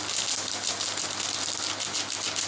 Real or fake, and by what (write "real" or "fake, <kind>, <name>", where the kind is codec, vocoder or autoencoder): real